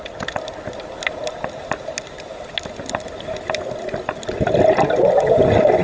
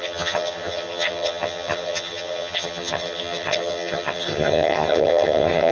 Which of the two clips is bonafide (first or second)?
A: first